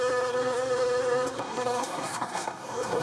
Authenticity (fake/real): fake